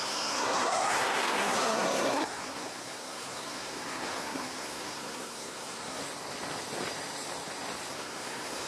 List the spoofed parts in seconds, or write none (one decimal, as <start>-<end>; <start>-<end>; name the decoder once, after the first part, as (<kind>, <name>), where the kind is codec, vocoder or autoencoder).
0.0-6.0 (codec, SNAC); 7.9-8.7